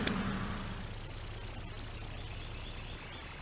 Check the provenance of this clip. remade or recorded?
recorded